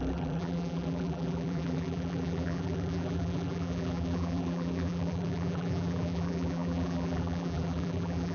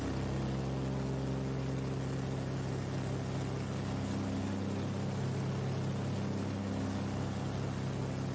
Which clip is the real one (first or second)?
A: second